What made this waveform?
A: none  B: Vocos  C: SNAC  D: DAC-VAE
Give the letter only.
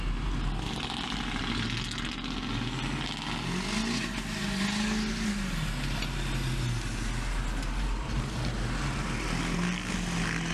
A